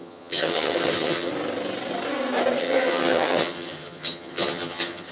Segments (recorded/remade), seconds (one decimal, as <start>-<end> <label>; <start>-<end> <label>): 0.0-1.3 remade; 1.3-2.6 recorded; 2.6-5.1 remade